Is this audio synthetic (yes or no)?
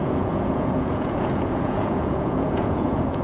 yes